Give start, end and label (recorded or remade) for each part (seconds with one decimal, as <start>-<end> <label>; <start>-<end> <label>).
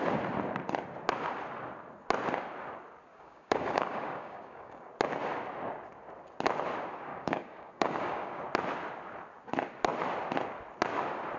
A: 0.0-3.1 recorded; 3.1-4.9 remade; 4.9-7.1 recorded; 7.1-8.4 remade; 8.4-11.4 recorded